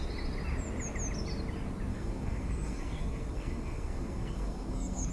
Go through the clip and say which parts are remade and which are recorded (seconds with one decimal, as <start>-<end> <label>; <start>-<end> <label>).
0.0-1.9 recorded; 1.9-5.1 remade